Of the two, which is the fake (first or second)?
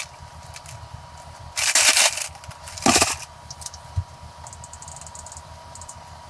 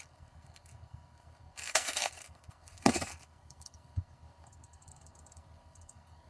second